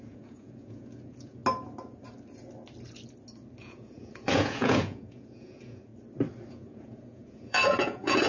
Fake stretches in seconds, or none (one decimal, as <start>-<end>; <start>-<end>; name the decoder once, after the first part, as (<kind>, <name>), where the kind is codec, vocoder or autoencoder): 0.0-1.4 (vocoder, Vocos); 3.6-5.9; 6.5-8.3